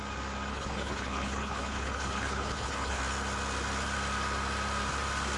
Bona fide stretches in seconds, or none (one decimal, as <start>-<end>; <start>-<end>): 0.0-0.5; 3.0-5.4